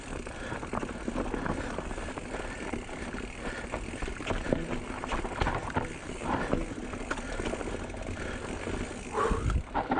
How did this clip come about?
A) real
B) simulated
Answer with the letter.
A